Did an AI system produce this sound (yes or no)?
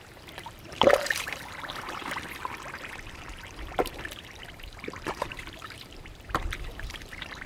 yes